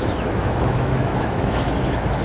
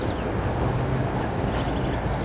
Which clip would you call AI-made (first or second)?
first